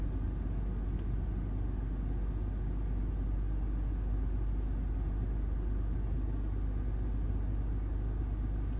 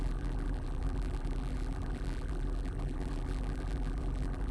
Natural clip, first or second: first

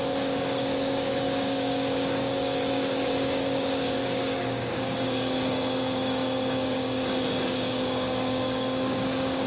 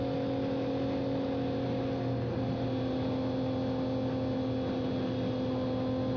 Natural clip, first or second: second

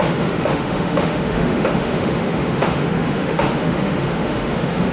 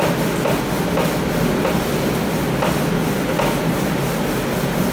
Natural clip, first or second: second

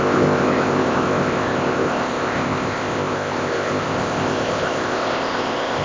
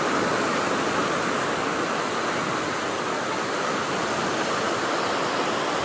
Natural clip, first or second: second